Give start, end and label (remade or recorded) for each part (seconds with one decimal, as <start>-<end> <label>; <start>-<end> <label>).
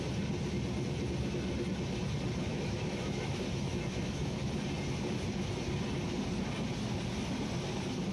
0.0-2.5 recorded; 2.5-4.4 remade; 4.4-8.1 recorded